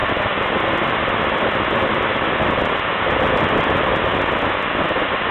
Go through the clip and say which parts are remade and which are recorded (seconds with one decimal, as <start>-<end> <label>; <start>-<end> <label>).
0.0-3.9 remade; 3.9-4.5 recorded; 4.5-5.3 remade